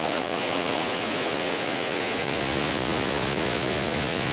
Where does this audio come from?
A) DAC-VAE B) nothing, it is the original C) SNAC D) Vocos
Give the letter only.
D